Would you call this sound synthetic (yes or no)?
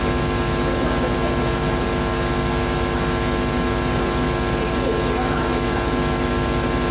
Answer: no